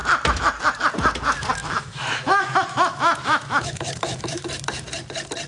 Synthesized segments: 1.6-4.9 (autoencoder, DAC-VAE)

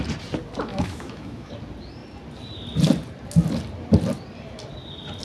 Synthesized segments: 0.7-1.5 (autoencoder, DAC-VAE)

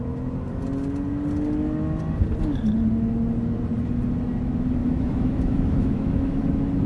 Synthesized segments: 4.8-6.4 (autoencoder, DAC-VAE)